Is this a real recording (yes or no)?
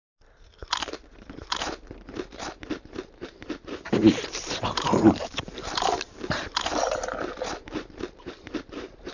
no